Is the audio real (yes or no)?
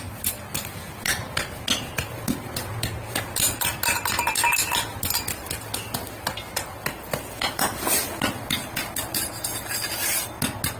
yes